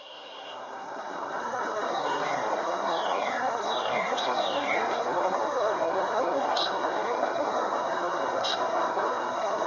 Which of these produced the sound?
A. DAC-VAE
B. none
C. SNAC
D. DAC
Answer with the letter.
C